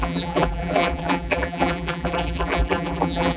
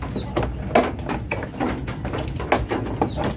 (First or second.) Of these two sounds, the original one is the second